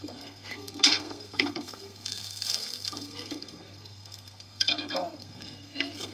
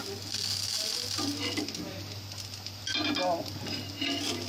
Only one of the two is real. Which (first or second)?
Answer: second